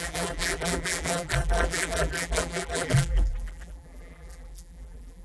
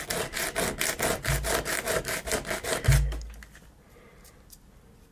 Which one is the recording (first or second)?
second